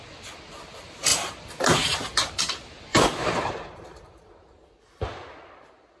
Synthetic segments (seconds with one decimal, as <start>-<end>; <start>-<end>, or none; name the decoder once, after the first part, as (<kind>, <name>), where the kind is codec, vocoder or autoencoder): 1.1-2.4 (vocoder, BigVGAN v2); 2.9-4.2